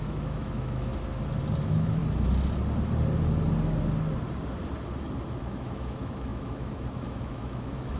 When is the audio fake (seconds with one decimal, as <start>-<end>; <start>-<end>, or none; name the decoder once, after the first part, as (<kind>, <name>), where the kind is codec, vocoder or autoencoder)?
0.0-0.9 (autoencoder, DAC-VAE); 1.6-2.0; 5.4-8.0